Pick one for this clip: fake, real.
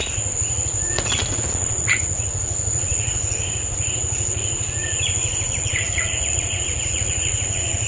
fake